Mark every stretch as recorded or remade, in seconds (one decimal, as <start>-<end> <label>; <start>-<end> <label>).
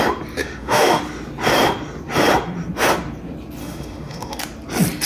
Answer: 0.0-0.4 recorded; 0.4-1.0 remade; 1.0-3.6 recorded; 3.6-4.4 remade; 4.4-5.1 recorded